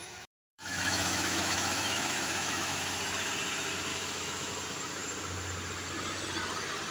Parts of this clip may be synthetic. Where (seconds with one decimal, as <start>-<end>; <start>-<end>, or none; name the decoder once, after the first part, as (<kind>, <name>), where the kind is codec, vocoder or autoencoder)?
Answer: 0.0-2.8 (autoencoder, DAC-VAE); 3.9-4.5